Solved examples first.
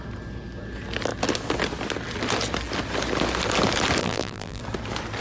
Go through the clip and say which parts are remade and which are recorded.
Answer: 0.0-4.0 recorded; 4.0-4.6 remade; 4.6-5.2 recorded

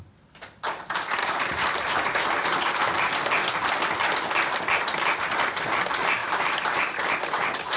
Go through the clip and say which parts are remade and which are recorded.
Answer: 0.0-1.2 recorded; 1.2-2.3 remade; 2.3-6.2 recorded; 6.2-7.0 remade; 7.0-7.8 recorded

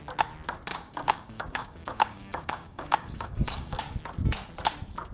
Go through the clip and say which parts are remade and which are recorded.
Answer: 0.0-0.7 recorded; 0.7-3.8 remade; 3.8-5.1 recorded

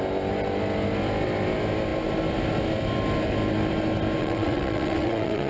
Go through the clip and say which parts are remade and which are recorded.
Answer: 0.0-4.2 recorded; 4.2-5.5 remade

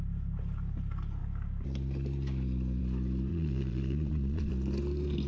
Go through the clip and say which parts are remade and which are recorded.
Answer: 0.0-3.3 recorded; 3.3-4.5 remade; 4.5-5.3 recorded

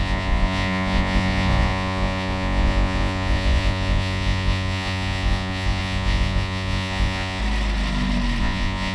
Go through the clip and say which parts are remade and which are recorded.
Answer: 0.0-7.4 remade; 7.4-8.4 recorded; 8.4-8.9 remade

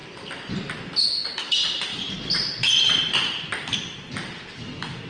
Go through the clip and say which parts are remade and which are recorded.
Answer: 0.0-1.9 recorded; 1.9-5.1 remade